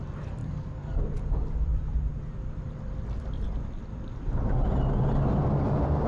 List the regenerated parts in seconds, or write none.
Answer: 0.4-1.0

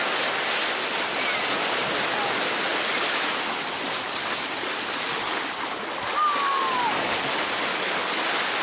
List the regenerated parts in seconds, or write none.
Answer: 6.5-7.3; 7.7-8.2